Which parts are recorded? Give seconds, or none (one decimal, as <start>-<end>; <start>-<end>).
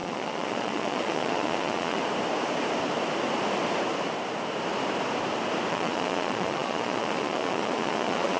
2.0-5.7